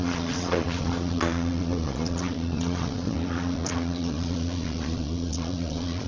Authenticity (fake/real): fake